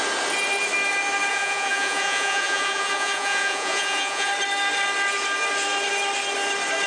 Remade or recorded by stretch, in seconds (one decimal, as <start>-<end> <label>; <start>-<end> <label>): 0.0-1.3 recorded; 1.3-4.3 remade; 4.3-6.9 recorded